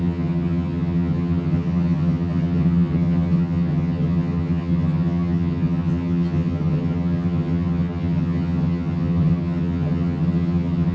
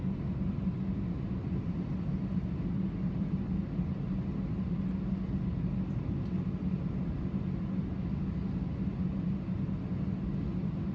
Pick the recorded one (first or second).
second